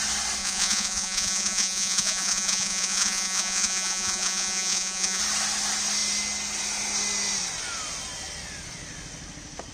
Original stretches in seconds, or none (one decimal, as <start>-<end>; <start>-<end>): 0.0-0.4; 5.2-9.7